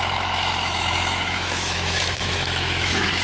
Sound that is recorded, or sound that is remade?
remade